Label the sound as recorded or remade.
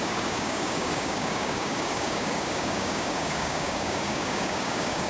remade